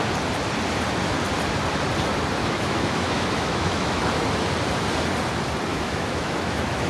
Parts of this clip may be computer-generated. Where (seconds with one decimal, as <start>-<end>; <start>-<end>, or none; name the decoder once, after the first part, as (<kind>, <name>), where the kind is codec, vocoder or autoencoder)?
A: 2.4-4.1 (autoencoder, DAC-VAE); 5.7-6.9